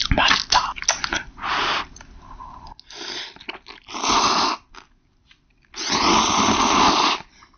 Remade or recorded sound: recorded